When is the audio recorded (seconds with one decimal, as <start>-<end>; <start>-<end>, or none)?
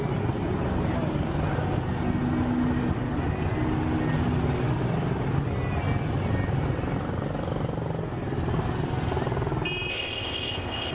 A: 0.0-9.9